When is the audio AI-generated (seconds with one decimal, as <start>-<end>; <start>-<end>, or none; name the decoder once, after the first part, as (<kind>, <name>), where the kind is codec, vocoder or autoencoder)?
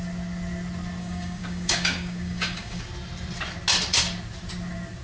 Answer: 1.0-2.8 (codec, DAC)